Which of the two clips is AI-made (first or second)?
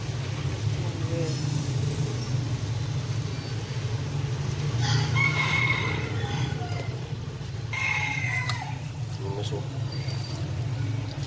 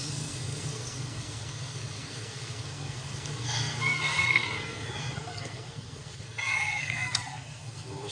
second